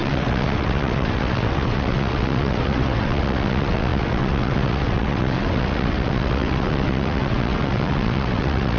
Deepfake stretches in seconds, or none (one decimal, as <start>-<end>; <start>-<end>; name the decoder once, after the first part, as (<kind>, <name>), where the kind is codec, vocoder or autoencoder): 0.0-8.8 (vocoder, WaveNeXt)